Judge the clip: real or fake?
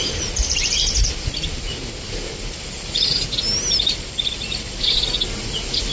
real